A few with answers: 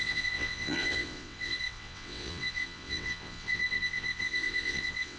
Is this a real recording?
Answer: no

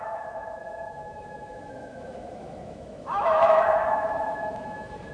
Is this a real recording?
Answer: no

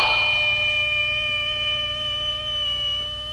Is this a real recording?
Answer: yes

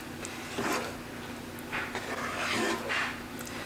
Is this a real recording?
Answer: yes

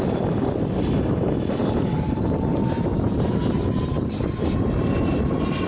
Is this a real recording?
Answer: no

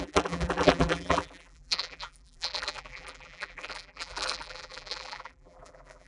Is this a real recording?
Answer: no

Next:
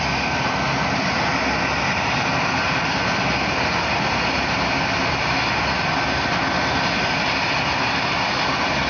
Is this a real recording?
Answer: yes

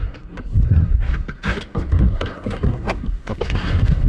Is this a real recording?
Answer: no